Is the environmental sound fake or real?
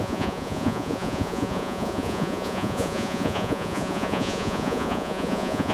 fake